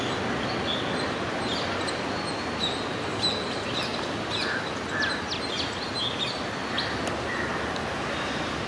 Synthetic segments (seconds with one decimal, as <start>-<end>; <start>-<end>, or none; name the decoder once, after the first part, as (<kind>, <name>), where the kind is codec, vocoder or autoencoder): none